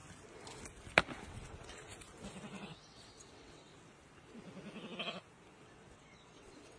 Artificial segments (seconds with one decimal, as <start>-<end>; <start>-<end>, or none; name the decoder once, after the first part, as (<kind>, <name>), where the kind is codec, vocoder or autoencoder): 1.3-1.9 (vocoder, WaveNeXt); 2.4-3.7; 5.6-6.8